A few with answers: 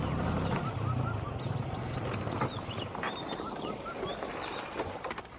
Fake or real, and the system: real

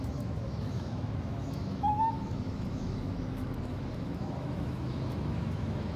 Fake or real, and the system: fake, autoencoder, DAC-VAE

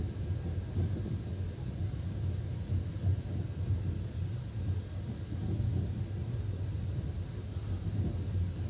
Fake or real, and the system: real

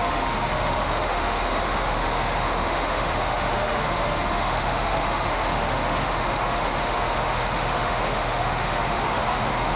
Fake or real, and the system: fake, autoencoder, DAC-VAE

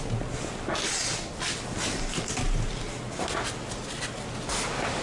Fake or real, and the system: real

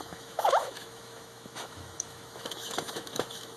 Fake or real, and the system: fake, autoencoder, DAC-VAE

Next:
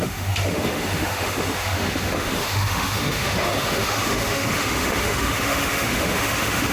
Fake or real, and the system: fake, autoencoder, DAC-VAE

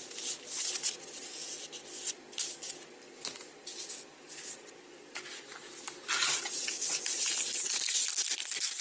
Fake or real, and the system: real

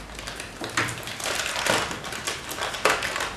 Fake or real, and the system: real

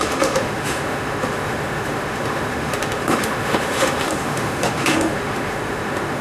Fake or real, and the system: fake, autoencoder, DAC-VAE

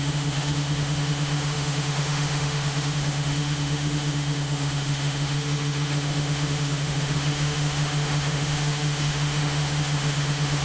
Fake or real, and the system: fake, autoencoder, DAC-VAE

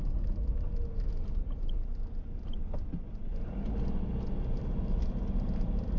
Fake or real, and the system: real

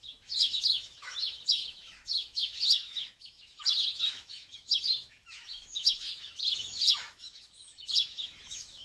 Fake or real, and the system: fake, autoencoder, DAC-VAE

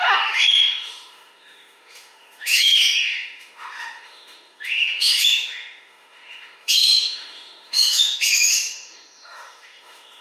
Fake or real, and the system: fake, autoencoder, DAC-VAE